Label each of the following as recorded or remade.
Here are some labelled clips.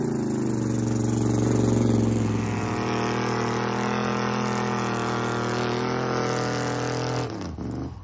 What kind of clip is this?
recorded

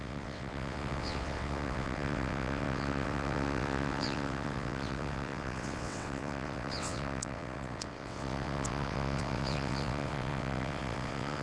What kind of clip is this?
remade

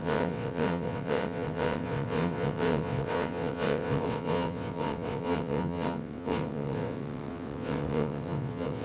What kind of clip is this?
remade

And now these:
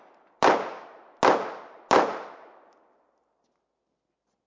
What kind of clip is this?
recorded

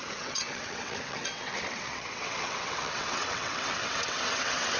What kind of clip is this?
remade